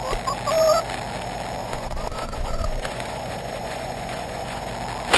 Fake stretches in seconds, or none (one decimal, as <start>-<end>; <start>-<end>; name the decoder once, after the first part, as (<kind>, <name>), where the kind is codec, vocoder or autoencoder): 1.6-4.7 (vocoder, Vocos)